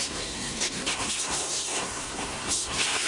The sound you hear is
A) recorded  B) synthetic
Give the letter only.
B